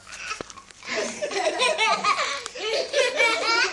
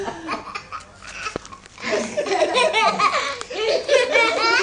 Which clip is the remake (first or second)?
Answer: first